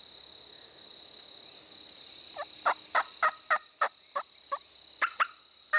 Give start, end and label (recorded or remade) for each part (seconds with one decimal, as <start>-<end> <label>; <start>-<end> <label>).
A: 0.0-5.8 recorded